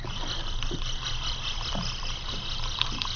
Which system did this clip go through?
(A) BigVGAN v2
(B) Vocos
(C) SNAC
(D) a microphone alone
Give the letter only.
D